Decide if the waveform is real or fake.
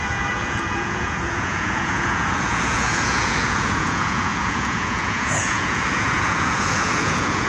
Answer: fake